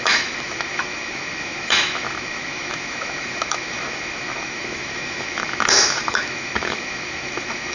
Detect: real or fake fake